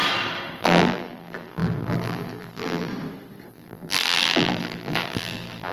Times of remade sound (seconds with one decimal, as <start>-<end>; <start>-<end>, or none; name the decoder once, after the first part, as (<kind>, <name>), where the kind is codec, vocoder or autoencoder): 0.6-2.9 (vocoder, BigVGAN v2); 3.5-5.7